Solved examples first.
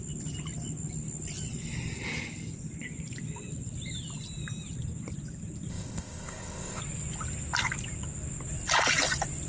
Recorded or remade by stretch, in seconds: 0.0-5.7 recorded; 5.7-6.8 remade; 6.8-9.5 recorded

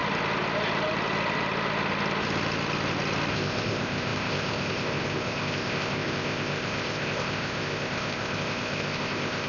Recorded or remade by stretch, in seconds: 0.0-3.3 recorded; 3.3-9.5 remade